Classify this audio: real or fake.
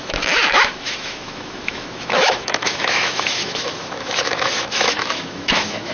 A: fake